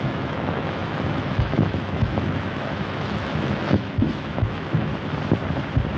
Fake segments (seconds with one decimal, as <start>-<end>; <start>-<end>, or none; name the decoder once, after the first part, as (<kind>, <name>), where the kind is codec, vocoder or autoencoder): 0.0-4.9 (autoencoder, DAC-VAE)